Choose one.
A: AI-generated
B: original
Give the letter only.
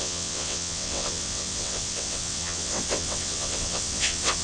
A